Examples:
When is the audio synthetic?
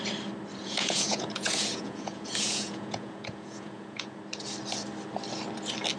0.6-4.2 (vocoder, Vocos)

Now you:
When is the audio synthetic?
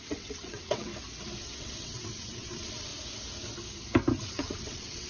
0.0-0.9 (vocoder, WaveNeXt); 1.4-2.9; 4.2-5.1